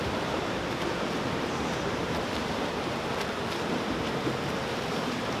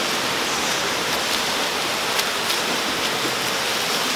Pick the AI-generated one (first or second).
first